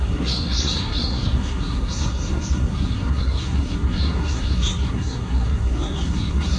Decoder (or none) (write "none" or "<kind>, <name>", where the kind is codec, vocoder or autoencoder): codec, SNAC